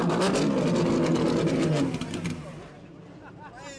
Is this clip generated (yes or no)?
no